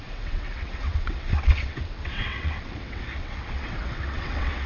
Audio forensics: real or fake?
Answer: fake